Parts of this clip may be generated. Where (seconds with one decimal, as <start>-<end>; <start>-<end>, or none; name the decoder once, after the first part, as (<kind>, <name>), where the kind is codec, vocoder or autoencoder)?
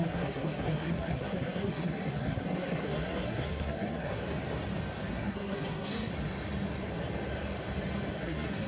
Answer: 0.0-4.2 (codec, SNAC); 5.1-6.1; 8.2-8.7